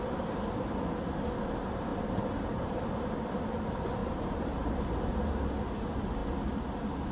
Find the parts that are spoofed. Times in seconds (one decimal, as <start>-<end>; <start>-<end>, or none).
1.9-2.5; 4.0-5.5